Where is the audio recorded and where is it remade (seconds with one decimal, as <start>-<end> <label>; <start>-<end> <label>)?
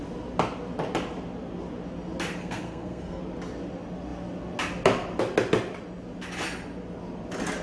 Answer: 0.0-2.4 recorded; 2.4-3.2 remade; 3.2-7.6 recorded